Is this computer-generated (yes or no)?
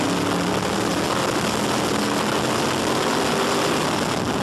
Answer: no